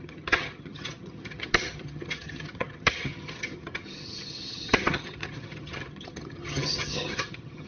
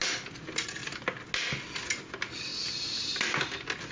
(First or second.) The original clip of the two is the second